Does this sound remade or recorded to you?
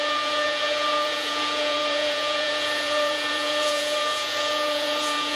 remade